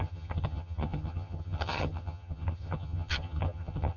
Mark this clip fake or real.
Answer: fake